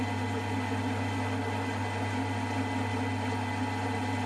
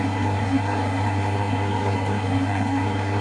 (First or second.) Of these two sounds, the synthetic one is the second